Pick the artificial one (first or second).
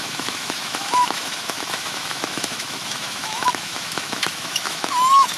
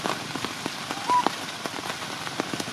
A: first